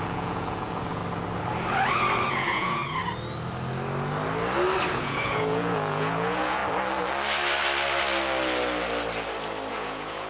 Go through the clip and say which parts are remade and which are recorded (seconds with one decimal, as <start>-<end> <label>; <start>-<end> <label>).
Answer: 0.0-1.0 remade; 1.0-2.3 recorded; 2.3-2.8 remade; 2.8-4.9 recorded; 4.9-6.6 remade; 6.6-9.7 recorded; 9.7-10.3 remade